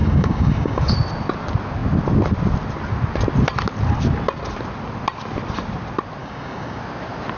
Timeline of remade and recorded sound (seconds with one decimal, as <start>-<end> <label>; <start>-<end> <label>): 0.0-0.8 remade; 0.8-6.2 recorded; 6.2-6.8 remade; 6.8-7.4 recorded